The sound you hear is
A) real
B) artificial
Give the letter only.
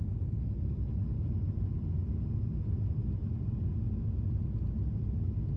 A